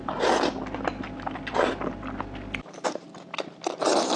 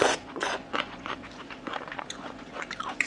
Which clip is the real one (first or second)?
first